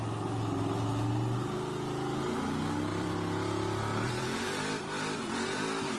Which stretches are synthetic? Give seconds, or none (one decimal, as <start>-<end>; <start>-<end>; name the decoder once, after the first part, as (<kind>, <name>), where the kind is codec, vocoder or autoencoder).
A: 2.9-5.6 (vocoder, BigVGAN v2)

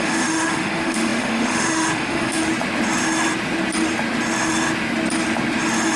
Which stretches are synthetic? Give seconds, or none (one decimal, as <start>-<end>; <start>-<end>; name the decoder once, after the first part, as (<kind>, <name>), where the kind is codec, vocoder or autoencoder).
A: 0.0-2.4 (autoencoder, DAC-VAE)

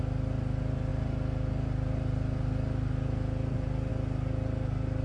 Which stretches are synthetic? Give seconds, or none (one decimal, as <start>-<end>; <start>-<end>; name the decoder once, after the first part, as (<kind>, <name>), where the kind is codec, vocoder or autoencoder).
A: none

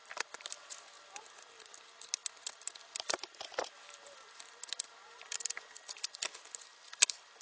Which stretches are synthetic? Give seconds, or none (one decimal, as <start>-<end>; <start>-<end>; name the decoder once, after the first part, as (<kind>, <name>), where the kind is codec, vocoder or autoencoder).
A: none

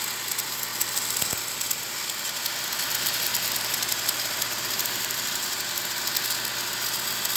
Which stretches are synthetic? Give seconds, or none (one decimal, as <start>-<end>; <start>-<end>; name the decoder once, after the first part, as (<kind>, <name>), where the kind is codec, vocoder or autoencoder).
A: 3.3-5.9 (vocoder, BigVGAN v2)